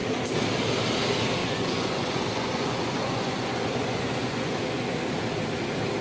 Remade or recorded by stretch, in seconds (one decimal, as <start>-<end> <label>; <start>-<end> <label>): 0.0-1.4 recorded; 1.4-5.0 remade; 5.0-6.0 recorded